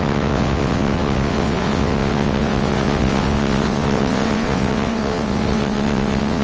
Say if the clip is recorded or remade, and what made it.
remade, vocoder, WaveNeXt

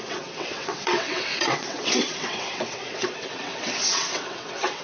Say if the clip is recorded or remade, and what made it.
remade, vocoder, WaveNeXt